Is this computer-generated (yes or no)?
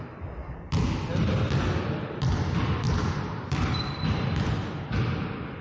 no